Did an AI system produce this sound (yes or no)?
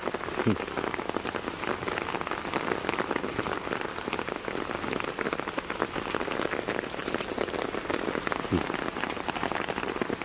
no